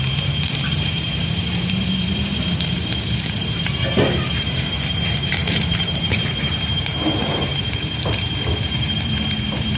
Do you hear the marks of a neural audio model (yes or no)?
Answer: yes